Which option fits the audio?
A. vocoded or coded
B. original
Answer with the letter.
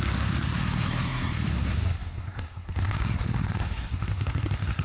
A